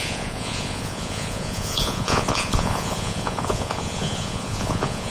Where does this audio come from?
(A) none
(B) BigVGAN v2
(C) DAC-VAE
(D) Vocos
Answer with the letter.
D